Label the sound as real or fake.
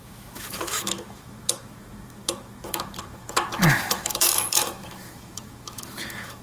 fake